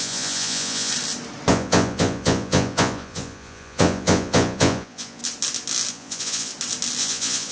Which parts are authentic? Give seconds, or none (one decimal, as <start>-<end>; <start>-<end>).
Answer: 0.9-1.5; 5.2-5.9; 6.5-7.0